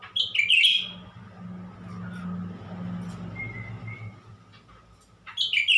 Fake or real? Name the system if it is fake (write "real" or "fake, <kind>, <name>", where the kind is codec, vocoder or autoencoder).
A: real